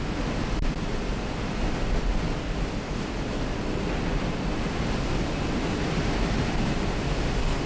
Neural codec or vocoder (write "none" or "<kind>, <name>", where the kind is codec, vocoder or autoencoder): none